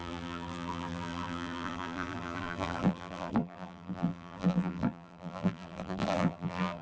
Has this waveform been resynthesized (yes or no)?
yes